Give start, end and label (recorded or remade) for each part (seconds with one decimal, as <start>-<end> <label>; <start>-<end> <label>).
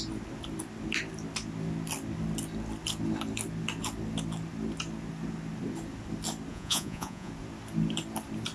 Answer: 0.0-6.5 recorded; 6.5-7.3 remade; 7.3-8.5 recorded